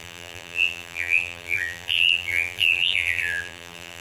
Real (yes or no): no